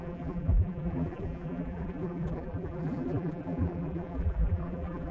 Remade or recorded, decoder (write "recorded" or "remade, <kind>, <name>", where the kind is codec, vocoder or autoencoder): remade, vocoder, BigVGAN v2